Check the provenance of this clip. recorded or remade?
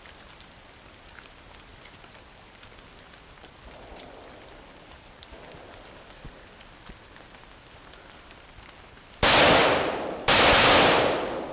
recorded